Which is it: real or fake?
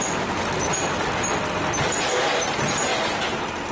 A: real